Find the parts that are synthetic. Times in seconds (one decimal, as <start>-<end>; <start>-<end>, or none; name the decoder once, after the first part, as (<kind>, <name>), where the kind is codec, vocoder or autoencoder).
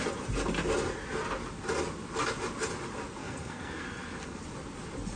3.2-4.4 (codec, SNAC)